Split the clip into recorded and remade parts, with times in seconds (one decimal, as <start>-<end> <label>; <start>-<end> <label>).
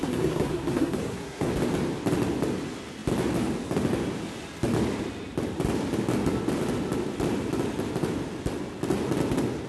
0.0-1.5 remade; 1.5-9.7 recorded